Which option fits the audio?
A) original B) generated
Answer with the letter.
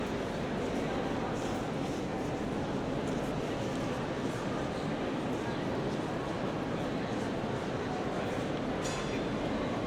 A